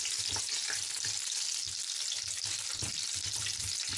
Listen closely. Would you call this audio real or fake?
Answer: real